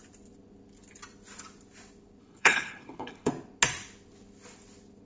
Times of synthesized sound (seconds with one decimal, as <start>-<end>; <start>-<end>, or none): 2.2-3.3

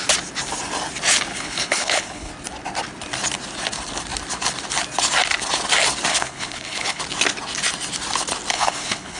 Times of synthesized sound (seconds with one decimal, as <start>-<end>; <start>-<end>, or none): 1.3-2.3; 6.1-7.0; 8.5-9.2

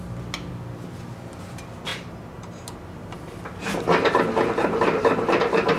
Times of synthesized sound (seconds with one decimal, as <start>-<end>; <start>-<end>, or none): 1.9-3.2; 4.6-5.8

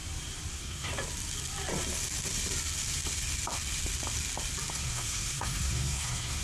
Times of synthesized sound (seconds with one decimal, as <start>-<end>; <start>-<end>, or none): 0.5-0.9; 4.7-6.4